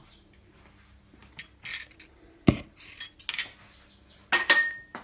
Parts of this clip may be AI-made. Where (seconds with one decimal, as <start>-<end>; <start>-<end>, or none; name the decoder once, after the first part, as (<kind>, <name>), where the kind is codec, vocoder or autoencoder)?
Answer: none